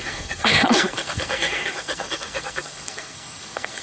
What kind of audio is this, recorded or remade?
remade